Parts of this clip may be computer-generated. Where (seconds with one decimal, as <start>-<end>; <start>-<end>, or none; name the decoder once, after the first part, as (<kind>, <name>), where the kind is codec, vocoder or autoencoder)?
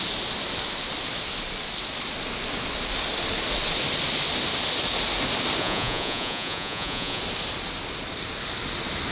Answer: 5.6-7.2 (vocoder, Vocos)